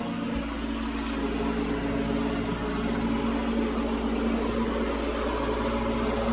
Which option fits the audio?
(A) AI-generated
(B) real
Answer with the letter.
B